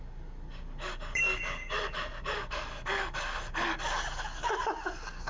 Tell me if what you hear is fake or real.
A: fake